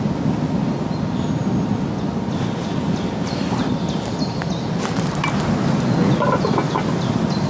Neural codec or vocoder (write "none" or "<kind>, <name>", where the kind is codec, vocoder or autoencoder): none